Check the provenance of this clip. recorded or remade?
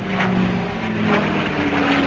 recorded